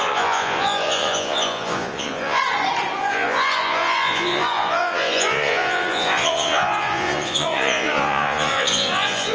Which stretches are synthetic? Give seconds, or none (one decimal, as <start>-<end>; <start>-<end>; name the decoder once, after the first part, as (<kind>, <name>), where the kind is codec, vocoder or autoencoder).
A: 0.0-2.4 (vocoder, Vocos); 3.0-9.3